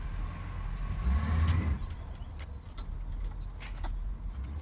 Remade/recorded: recorded